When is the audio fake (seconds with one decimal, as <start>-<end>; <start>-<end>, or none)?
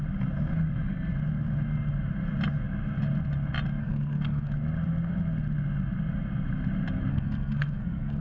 3.8-4.5; 7.1-8.2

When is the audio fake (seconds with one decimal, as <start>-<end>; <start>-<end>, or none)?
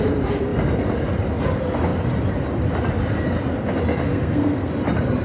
4.1-4.7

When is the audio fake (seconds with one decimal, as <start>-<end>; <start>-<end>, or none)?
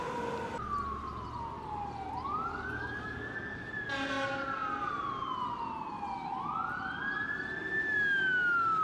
2.5-3.7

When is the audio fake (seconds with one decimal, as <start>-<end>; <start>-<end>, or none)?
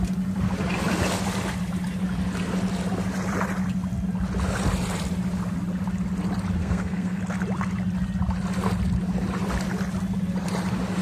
6.6-7.2